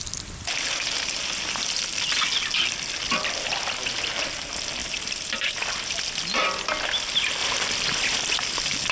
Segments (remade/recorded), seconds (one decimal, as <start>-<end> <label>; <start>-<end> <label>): 0.0-4.8 recorded; 4.8-5.7 remade; 5.7-7.4 recorded; 7.4-8.9 remade